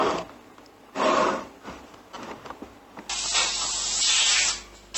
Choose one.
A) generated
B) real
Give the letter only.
B